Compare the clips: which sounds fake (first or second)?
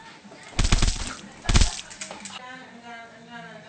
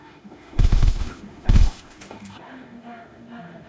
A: second